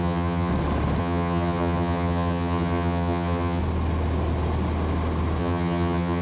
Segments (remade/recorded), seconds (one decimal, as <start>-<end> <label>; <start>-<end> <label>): 0.0-0.5 remade; 0.5-1.0 recorded; 1.0-3.6 remade; 3.6-5.4 recorded; 5.4-6.2 remade